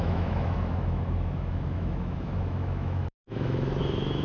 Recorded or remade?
remade